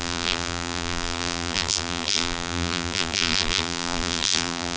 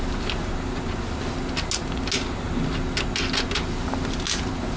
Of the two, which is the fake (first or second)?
first